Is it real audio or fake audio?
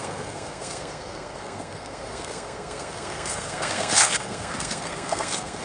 fake